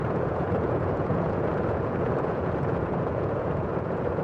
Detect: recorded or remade remade